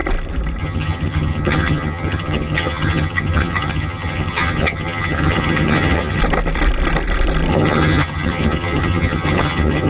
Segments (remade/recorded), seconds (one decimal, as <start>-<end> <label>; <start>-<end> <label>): 0.0-0.6 recorded; 0.6-6.2 remade; 6.2-7.5 recorded; 7.5-9.9 remade